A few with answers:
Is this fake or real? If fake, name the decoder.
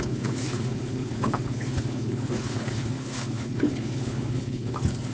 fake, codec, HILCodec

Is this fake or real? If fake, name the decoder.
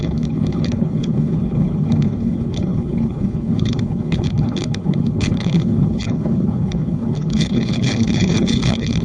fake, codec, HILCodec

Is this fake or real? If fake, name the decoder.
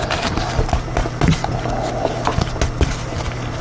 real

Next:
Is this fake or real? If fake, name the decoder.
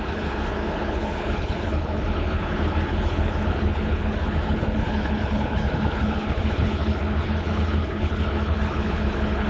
fake, codec, HILCodec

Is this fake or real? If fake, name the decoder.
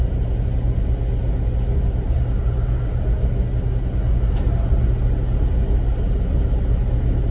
real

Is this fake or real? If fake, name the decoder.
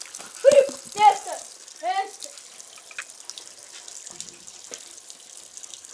real